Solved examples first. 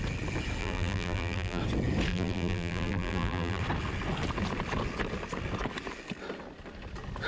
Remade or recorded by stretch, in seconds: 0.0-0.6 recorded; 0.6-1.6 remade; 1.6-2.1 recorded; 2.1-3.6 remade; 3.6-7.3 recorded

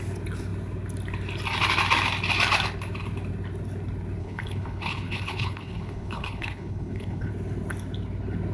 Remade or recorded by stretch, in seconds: 0.0-4.2 recorded; 4.2-7.3 remade; 7.3-8.5 recorded

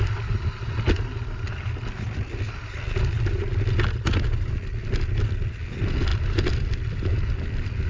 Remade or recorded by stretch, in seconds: 0.0-7.9 recorded

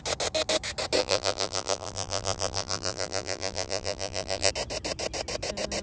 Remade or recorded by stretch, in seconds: 0.0-1.0 recorded; 1.0-4.5 remade; 4.5-5.8 recorded

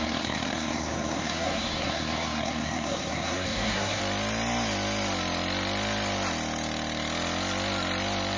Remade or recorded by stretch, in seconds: 0.0-4.0 remade; 4.0-8.4 recorded